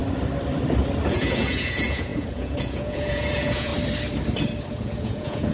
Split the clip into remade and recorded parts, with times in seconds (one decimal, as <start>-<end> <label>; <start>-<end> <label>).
0.0-1.1 recorded; 1.1-3.7 remade; 3.7-4.7 recorded; 4.7-5.5 remade